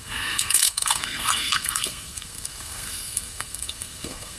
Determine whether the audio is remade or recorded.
remade